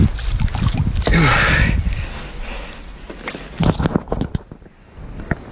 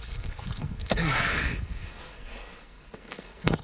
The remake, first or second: second